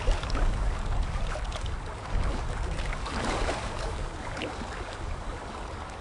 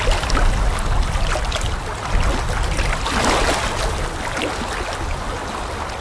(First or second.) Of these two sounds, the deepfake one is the first